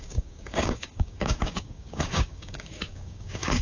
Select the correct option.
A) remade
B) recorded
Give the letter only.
A